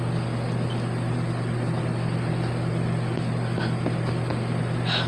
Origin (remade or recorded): recorded